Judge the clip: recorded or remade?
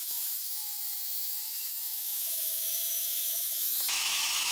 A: remade